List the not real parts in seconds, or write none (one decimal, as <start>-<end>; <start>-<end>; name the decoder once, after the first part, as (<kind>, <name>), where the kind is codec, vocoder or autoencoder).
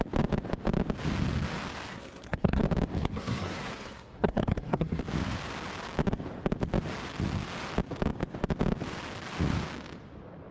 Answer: 1.9-2.6 (codec, SNAC); 3.0-5.0